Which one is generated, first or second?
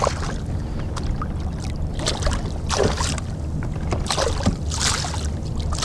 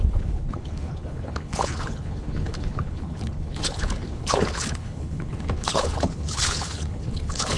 second